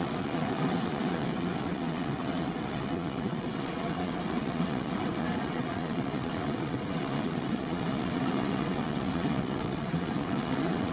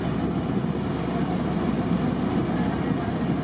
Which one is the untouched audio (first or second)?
second